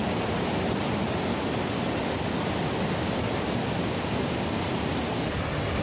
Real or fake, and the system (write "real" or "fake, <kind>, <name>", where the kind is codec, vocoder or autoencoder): real